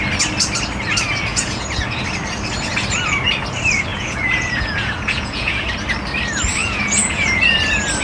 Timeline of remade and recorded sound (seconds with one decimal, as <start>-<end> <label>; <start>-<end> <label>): 0.0-1.3 recorded; 1.3-1.9 remade; 1.9-3.9 recorded; 3.9-5.6 remade; 5.6-6.6 recorded; 6.6-7.4 remade; 7.4-8.0 recorded